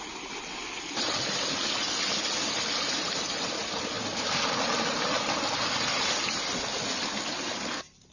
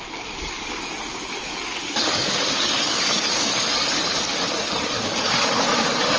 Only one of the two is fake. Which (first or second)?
second